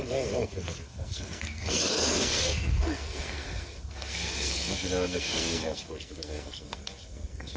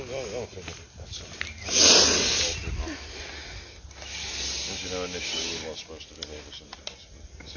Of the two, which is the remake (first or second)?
first